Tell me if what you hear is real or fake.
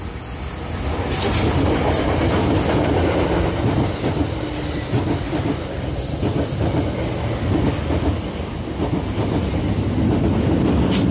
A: real